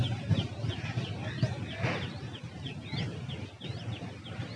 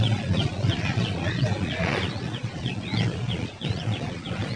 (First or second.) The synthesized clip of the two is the second